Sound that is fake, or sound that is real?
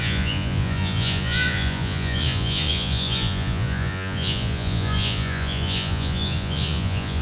fake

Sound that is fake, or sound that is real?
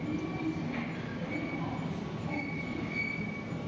real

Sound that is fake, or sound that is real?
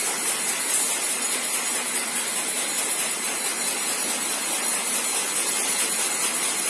real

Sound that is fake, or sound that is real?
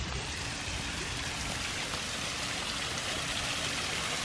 real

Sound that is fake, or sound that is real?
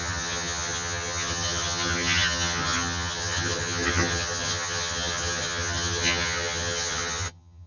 fake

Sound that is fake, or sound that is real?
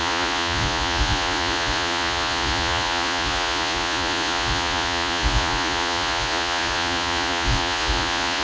fake